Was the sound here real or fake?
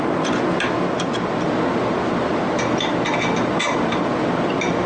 real